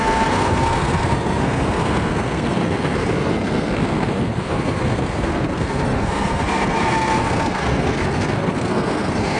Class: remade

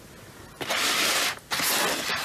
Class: recorded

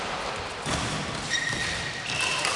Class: recorded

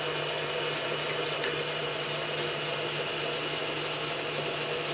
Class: recorded